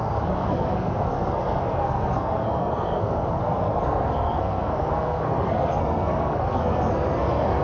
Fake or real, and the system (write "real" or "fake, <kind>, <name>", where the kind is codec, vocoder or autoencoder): fake, codec, SNAC